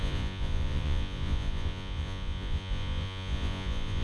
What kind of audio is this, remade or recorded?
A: remade